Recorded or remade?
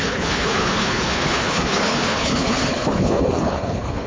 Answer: remade